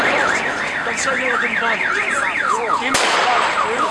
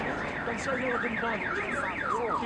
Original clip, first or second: first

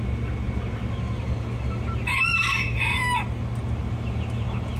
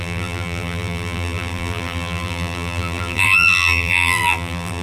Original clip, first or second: first